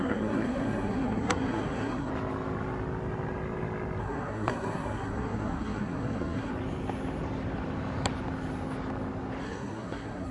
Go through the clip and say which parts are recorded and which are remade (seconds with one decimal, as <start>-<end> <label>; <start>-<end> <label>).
0.0-2.1 remade; 2.1-4.0 recorded; 4.0-6.5 remade; 6.5-9.4 recorded; 9.4-10.3 remade